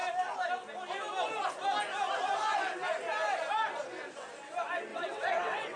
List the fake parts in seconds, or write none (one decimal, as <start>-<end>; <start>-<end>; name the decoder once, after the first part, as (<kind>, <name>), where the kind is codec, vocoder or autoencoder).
4.9-5.8 (vocoder, WaveNeXt)